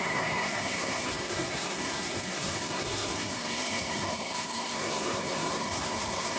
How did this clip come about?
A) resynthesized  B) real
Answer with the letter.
A